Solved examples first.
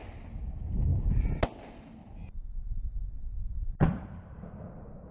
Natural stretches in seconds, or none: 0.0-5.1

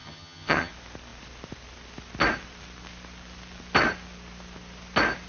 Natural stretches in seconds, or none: 0.7-5.3

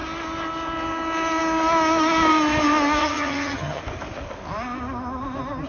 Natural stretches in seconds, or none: 0.0-3.0; 3.8-5.7

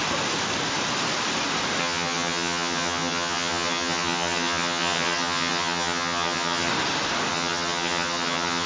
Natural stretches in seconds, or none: 0.0-1.8; 6.7-7.3

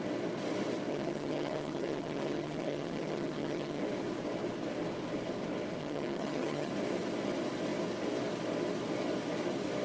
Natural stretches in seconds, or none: 0.0-0.9; 3.8-5.8; 6.7-9.8

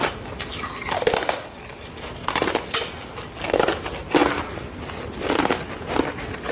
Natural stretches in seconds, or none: 0.0-6.5

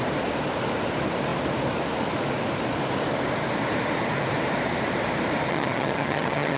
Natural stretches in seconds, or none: 0.0-5.5

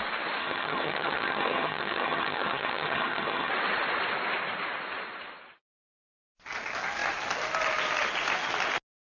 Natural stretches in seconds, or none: 0.0-0.4; 3.5-9.1